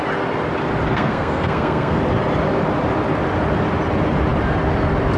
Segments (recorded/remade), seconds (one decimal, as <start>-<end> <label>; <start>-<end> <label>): 0.0-0.9 recorded; 0.9-2.0 remade; 2.0-5.2 recorded